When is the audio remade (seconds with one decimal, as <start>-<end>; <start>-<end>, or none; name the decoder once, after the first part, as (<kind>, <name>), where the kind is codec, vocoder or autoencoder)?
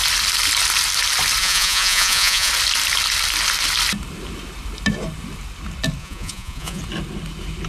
1.4-2.5 (vocoder, Vocos); 6.0-6.8